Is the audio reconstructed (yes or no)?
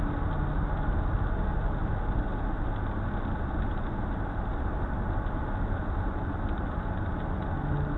no